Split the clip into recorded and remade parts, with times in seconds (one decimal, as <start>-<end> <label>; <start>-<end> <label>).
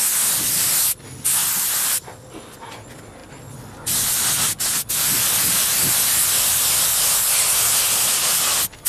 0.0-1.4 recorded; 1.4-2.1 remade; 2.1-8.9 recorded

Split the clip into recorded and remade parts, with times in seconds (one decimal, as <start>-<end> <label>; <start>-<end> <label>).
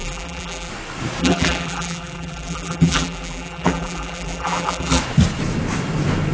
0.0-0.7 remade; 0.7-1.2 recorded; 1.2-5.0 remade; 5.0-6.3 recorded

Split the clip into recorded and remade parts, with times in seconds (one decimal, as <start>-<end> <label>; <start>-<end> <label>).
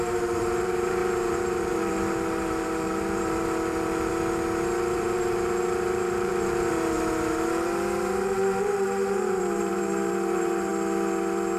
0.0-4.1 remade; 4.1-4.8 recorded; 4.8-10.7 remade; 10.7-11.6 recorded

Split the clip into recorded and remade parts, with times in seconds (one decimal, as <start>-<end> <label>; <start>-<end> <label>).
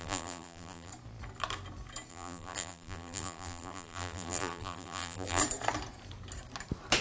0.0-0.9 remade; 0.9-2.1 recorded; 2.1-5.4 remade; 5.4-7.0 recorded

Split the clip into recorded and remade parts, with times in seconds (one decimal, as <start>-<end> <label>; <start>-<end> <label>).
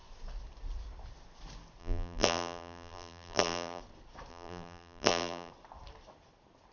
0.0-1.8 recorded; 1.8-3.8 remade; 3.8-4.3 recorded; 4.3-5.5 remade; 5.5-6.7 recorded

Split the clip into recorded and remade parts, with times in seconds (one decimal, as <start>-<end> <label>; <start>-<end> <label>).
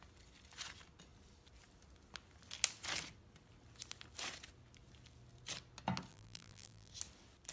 0.0-6.1 recorded; 6.1-6.9 remade; 6.9-7.5 recorded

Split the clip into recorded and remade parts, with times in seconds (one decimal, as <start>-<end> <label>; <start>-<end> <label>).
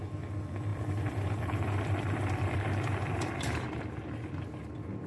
0.0-0.7 recorded; 0.7-3.8 remade; 3.8-5.1 recorded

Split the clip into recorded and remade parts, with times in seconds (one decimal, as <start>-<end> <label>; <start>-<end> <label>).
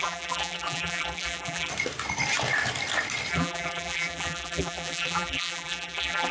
0.0-1.7 remade; 1.7-3.3 recorded; 3.3-6.3 remade